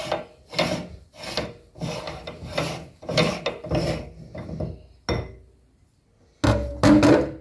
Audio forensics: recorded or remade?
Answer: recorded